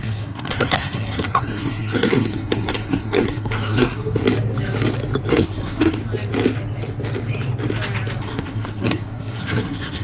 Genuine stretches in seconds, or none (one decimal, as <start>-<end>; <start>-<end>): 4.2-5.3; 6.0-8.2